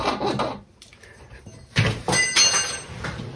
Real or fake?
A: real